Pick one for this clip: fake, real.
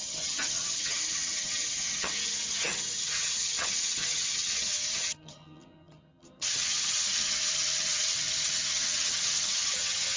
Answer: fake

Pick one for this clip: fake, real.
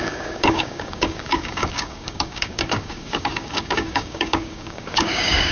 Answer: fake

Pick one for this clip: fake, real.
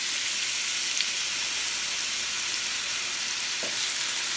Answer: real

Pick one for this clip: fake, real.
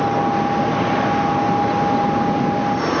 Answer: real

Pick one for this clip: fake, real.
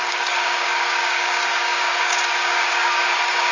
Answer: fake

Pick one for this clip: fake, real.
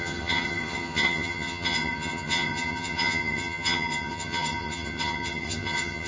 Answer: fake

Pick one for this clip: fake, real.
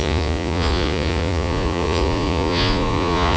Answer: fake